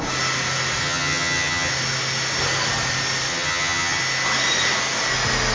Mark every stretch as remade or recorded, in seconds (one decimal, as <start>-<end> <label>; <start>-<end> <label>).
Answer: 0.0-0.8 recorded; 0.8-1.7 remade; 1.7-3.3 recorded; 3.3-4.0 remade; 4.0-5.5 recorded